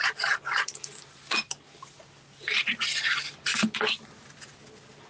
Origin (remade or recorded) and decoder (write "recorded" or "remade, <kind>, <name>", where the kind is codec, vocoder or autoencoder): recorded